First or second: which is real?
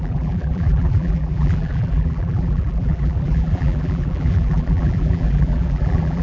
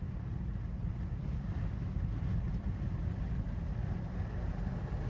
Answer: second